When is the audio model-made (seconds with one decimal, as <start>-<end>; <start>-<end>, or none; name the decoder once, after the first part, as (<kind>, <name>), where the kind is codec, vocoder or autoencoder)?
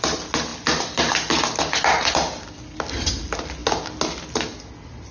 none